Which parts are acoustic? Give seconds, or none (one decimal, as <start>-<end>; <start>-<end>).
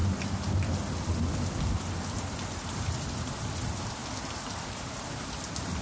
0.0-5.8